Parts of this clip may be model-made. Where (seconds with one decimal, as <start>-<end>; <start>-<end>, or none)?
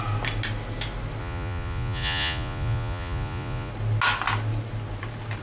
1.2-3.7